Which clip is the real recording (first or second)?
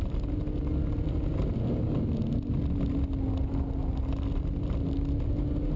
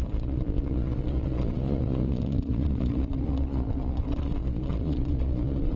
first